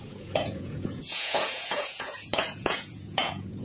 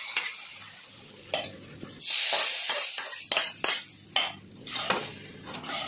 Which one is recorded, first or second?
second